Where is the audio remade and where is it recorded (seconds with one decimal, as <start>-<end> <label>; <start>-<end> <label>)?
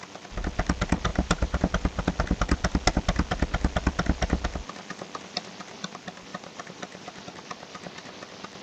0.0-1.1 recorded; 1.1-1.7 remade; 1.7-6.3 recorded; 6.3-7.2 remade; 7.2-8.6 recorded